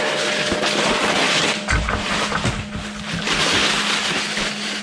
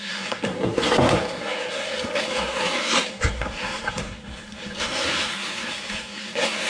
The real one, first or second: first